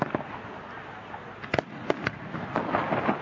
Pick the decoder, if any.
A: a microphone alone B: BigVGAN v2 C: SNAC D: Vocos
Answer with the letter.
A